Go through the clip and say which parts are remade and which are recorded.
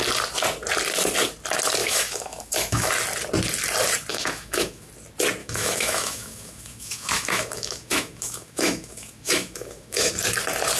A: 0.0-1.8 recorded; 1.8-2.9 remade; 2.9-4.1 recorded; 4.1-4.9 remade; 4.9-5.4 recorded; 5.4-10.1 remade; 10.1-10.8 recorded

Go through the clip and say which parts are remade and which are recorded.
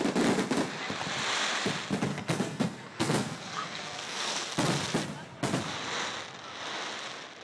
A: 0.0-2.1 recorded; 2.1-4.5 remade; 4.5-7.4 recorded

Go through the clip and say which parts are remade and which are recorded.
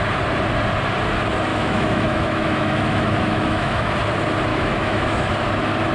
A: 0.0-1.5 recorded; 1.5-3.9 remade; 3.9-4.5 recorded; 4.5-5.3 remade; 5.3-5.9 recorded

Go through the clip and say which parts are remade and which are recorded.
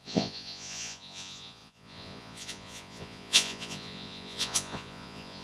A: 0.0-5.4 remade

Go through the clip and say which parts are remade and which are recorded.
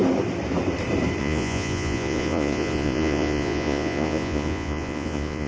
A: 0.0-1.2 recorded; 1.2-5.5 remade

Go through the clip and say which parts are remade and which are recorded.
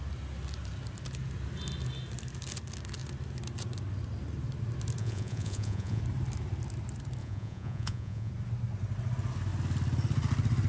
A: 0.0-5.0 recorded; 5.0-6.0 remade; 6.0-7.2 recorded; 7.2-8.3 remade; 8.3-10.7 recorded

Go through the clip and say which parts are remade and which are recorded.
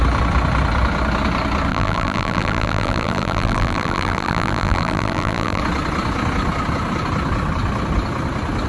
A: 0.0-1.7 recorded; 1.7-5.6 remade; 5.6-8.7 recorded